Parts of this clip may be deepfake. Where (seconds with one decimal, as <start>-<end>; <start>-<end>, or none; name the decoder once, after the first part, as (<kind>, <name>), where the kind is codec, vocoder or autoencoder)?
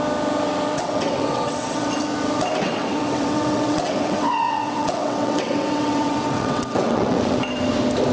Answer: 0.7-1.9 (vocoder, WaveNeXt); 2.6-7.4